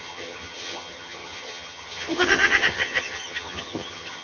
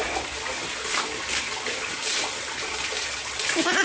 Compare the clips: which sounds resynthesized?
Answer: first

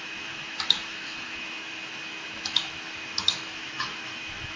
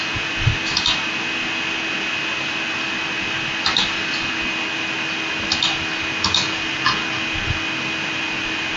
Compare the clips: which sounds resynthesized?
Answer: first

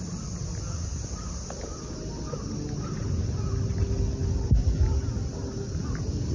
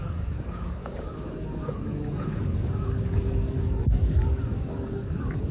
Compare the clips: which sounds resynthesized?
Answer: second